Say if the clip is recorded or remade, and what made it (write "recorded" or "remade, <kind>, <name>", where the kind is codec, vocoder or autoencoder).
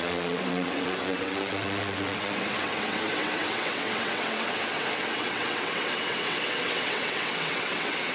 remade, vocoder, WaveNeXt